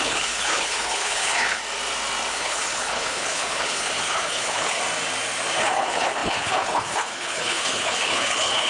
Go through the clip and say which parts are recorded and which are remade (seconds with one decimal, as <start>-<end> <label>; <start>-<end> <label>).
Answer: 0.0-1.6 remade; 1.6-2.3 recorded; 2.3-4.8 remade; 4.8-5.6 recorded; 5.6-8.7 remade